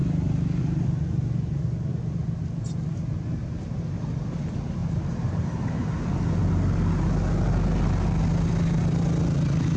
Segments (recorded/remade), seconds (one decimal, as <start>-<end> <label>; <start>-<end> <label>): 0.0-9.8 recorded